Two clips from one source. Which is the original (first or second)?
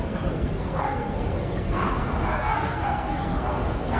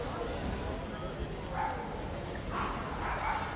second